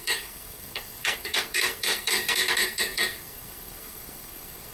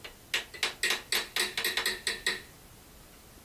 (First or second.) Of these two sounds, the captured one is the second